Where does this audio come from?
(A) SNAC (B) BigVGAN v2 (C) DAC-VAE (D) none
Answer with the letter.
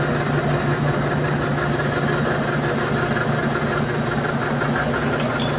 D